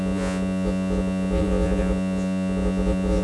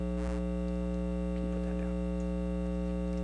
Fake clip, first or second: first